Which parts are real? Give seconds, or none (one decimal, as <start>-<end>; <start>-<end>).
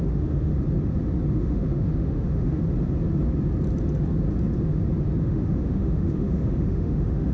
0.5-1.3; 2.6-5.2